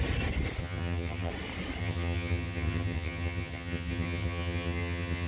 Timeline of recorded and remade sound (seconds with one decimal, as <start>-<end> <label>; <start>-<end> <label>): 0.0-0.6 recorded; 0.6-1.3 remade; 1.3-1.8 recorded; 1.8-5.3 remade